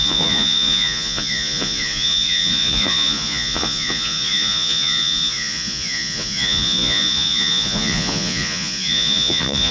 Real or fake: fake